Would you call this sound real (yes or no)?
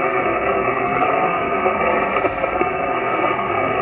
no